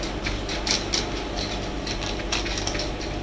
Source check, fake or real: real